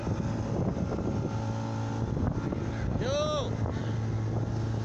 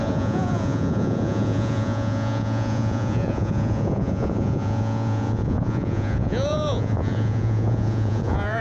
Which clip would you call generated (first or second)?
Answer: second